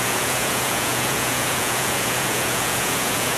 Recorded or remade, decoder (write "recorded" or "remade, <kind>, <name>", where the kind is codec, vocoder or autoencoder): remade, vocoder, Vocos